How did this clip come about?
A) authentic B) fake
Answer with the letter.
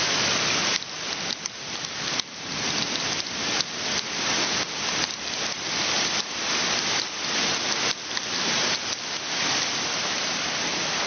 A